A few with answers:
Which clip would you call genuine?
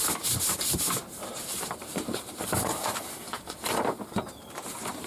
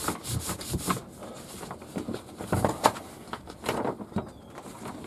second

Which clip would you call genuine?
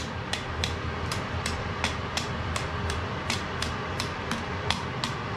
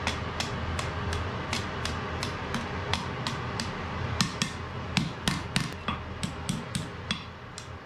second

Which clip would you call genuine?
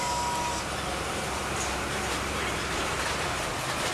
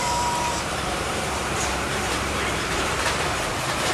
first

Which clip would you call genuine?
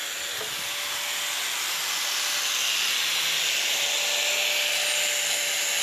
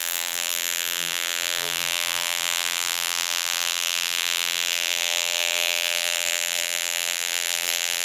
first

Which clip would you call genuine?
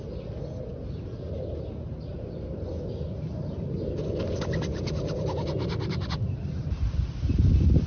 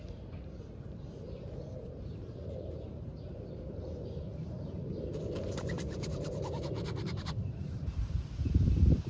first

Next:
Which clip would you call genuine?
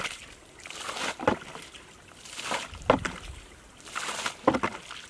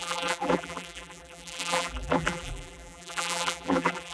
first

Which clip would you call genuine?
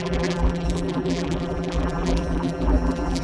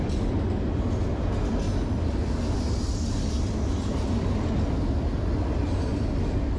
second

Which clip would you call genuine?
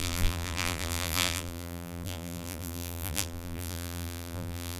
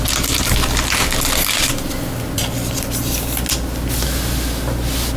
second